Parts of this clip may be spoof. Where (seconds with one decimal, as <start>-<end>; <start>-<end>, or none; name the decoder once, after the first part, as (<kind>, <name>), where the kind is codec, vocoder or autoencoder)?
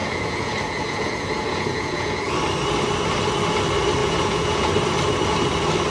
0.0-2.3 (vocoder, Vocos); 4.0-4.7